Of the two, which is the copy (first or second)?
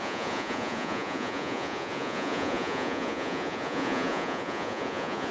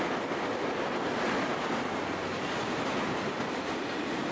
first